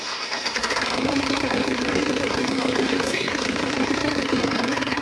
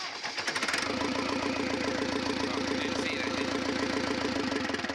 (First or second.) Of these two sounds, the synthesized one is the first